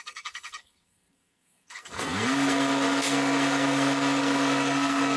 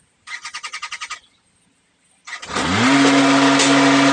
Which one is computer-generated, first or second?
first